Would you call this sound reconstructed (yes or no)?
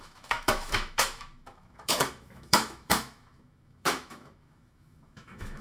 yes